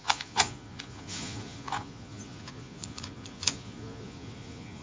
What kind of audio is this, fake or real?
fake